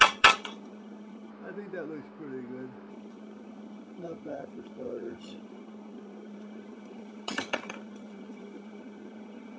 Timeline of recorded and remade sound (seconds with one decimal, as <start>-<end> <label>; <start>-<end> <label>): 0.0-1.3 remade; 1.3-2.9 recorded; 2.9-9.6 remade